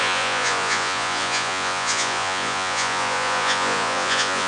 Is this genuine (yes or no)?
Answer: no